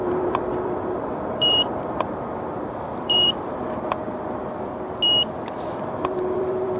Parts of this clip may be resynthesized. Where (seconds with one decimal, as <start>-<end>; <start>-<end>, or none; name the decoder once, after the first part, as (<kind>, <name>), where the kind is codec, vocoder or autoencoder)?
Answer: 0.0-4.7 (vocoder, BigVGAN v2); 5.8-6.8

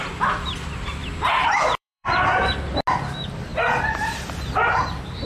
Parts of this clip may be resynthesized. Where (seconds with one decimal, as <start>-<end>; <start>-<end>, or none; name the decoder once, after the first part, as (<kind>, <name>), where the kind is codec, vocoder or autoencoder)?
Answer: 1.0-2.2 (vocoder, BigVGAN v2)

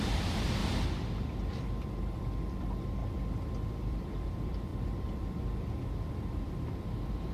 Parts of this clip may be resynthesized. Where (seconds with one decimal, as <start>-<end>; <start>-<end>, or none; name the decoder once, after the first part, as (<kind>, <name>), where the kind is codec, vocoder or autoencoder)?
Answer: 0.0-0.6 (vocoder, BigVGAN v2); 2.5-3.0; 3.7-7.3